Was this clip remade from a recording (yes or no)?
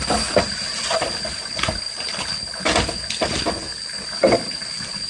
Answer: no